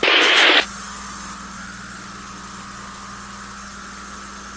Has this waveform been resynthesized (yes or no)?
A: no